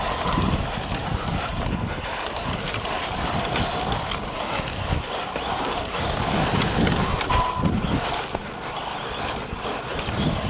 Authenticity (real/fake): real